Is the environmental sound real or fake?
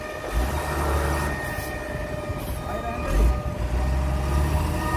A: real